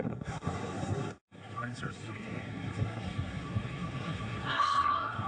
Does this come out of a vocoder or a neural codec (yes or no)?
yes